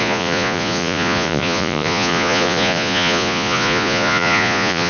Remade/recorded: remade